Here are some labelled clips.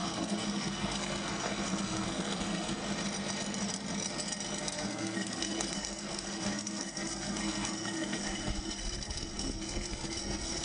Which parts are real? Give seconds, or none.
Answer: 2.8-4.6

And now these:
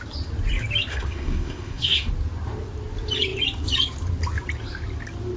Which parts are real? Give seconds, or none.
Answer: 0.0-0.9; 2.1-5.4

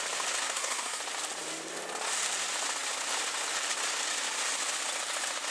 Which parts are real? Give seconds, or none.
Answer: 0.0-0.4; 1.0-5.5

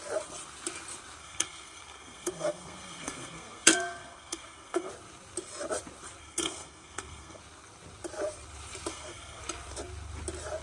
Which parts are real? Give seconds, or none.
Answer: 0.0-1.2; 4.9-6.2; 7.4-8.9; 9.4-10.6